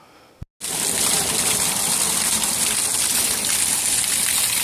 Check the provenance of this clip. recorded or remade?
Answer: recorded